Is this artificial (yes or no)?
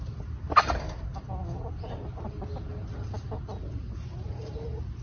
no